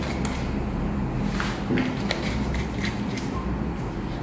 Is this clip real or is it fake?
real